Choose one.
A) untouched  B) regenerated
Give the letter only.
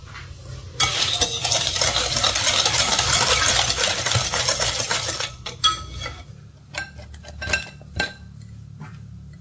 A